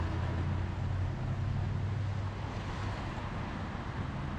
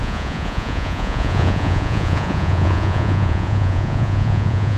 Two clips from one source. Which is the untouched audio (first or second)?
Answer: first